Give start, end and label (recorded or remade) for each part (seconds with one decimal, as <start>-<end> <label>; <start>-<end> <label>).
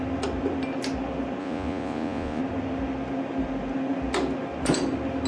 0.0-1.4 recorded; 1.4-2.4 remade; 2.4-5.3 recorded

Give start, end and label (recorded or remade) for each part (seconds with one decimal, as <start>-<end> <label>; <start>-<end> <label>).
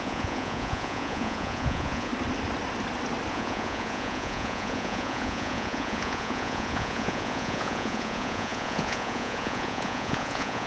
0.0-2.1 remade; 2.1-3.3 recorded; 3.3-10.7 remade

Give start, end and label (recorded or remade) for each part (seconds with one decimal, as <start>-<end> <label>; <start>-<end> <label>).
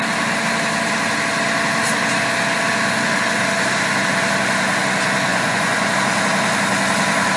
0.0-5.3 recorded; 5.3-5.9 remade; 5.9-7.4 recorded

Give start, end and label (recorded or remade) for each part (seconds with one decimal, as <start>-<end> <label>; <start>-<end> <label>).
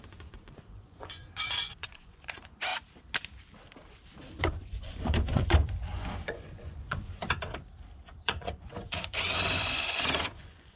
0.0-2.7 remade; 2.7-4.4 recorded; 4.4-7.2 remade; 7.2-8.2 recorded; 8.2-10.8 remade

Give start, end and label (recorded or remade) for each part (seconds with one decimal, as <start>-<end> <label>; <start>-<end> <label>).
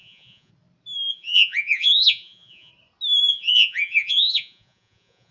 0.0-0.5 remade; 0.5-1.1 recorded; 1.1-2.7 remade; 2.7-3.3 recorded; 3.3-5.3 remade